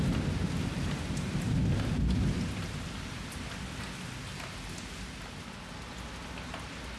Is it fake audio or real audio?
real